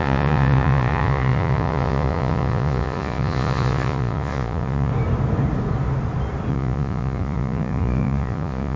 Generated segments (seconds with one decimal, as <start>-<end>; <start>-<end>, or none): 0.0-4.9; 6.5-8.8